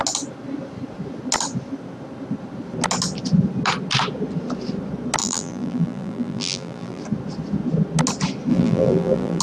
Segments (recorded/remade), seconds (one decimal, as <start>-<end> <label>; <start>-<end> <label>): 0.0-5.2 recorded; 5.2-7.0 remade; 7.0-8.5 recorded; 8.5-9.4 remade